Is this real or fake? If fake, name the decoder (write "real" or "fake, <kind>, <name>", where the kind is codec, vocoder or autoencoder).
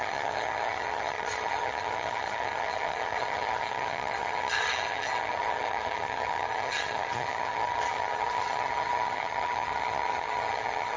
fake, vocoder, HiFi-GAN